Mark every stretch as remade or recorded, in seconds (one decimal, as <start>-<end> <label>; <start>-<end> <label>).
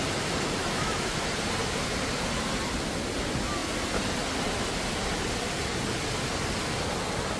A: 0.0-0.6 recorded; 0.6-1.2 remade; 1.2-7.4 recorded